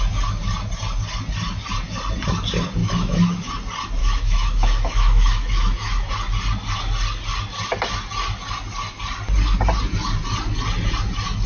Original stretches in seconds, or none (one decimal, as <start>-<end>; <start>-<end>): 0.0-2.8; 3.5-4.0; 6.1-11.5